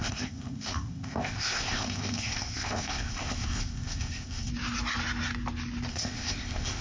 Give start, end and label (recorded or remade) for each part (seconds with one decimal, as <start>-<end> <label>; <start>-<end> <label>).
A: 0.0-4.5 remade; 4.5-5.9 recorded; 5.9-6.8 remade